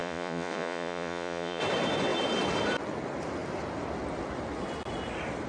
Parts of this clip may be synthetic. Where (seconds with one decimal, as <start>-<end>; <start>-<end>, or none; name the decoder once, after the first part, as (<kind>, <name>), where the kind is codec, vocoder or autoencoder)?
0.0-1.6 (vocoder, Vocos)